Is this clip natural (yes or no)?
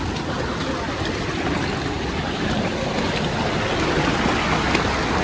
yes